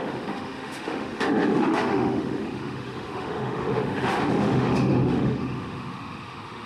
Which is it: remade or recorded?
remade